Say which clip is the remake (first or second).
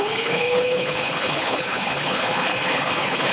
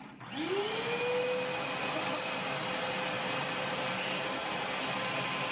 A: first